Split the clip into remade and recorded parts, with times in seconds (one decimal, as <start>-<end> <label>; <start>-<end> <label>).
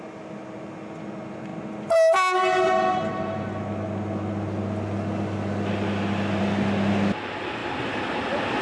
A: 0.0-7.6 recorded; 7.6-8.6 remade